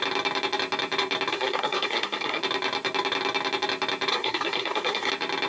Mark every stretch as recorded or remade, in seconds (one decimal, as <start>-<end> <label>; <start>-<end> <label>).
0.0-1.3 recorded; 1.3-2.4 remade; 2.4-4.1 recorded; 4.1-5.1 remade; 5.1-5.5 recorded